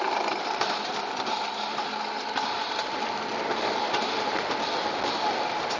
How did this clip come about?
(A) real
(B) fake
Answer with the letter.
A